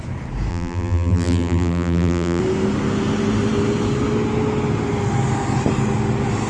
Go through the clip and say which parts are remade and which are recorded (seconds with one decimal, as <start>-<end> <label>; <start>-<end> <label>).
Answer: 0.0-0.5 recorded; 0.5-2.4 remade; 2.4-6.5 recorded